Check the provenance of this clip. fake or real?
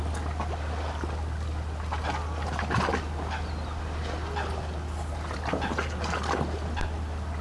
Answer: real